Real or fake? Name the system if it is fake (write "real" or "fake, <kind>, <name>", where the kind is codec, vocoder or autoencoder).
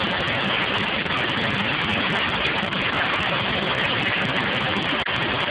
real